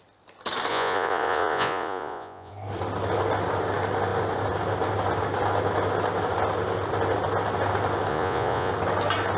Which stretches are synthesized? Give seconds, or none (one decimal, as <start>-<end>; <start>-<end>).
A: 0.7-2.5; 8.1-8.7